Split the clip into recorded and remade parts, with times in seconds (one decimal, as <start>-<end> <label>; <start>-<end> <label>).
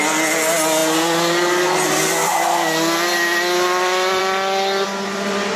0.0-5.6 recorded